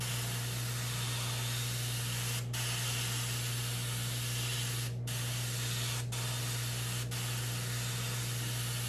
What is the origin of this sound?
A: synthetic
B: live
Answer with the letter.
B